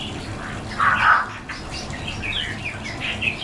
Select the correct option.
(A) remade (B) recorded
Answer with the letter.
B